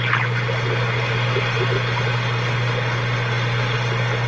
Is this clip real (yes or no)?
yes